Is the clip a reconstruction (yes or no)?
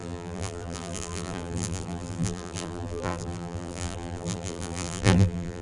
yes